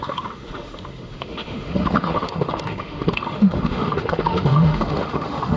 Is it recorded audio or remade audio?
remade